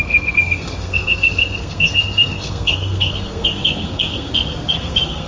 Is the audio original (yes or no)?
no